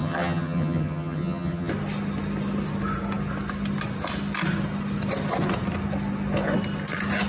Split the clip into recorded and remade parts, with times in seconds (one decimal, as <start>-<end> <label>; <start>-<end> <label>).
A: 0.0-1.7 remade; 1.7-7.3 recorded